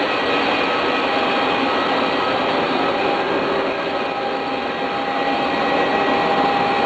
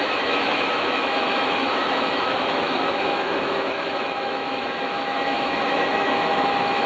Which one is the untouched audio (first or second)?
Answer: first